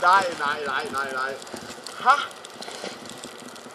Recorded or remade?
recorded